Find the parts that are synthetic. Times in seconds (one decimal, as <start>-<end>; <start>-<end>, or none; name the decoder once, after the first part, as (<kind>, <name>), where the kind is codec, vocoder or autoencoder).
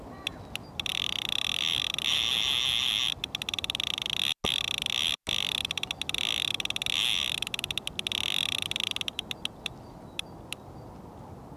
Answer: none